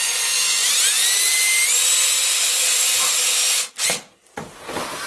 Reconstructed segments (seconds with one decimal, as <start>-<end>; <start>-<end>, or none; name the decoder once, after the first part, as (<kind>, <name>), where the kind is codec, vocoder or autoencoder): none